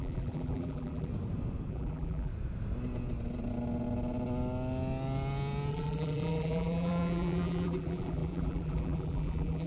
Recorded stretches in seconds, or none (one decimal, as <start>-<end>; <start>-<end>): 1.1-1.7; 2.3-5.7